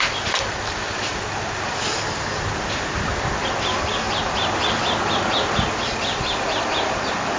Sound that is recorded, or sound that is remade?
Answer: recorded